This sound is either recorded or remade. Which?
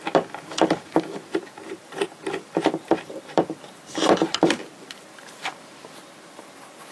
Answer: remade